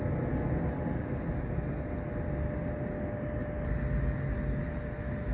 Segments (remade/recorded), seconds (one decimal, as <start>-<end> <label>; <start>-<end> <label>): 0.0-5.3 recorded